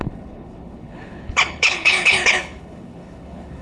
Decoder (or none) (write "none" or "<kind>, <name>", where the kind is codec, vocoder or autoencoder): codec, HILCodec